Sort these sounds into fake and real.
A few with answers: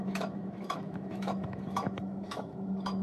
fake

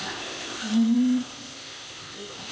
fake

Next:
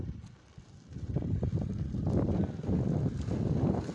real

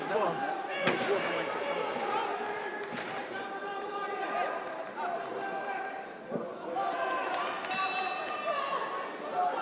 real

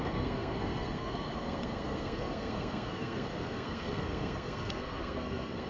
fake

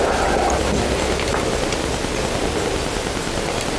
real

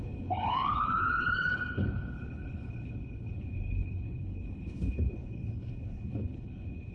fake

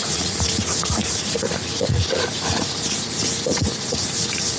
fake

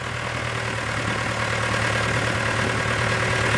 real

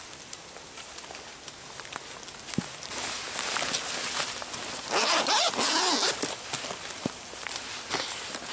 real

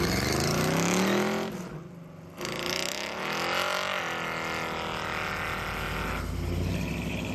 real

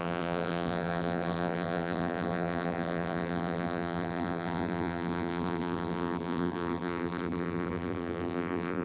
fake